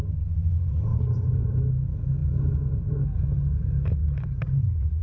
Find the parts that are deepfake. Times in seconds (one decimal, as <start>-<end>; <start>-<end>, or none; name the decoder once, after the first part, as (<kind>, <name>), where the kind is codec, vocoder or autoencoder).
0.9-1.5 (vocoder, BigVGAN v2); 4.0-5.0